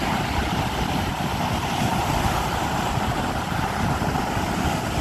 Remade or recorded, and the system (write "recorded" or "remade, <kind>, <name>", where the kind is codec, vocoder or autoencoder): recorded